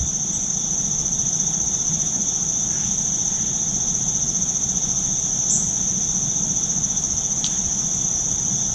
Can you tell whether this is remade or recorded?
recorded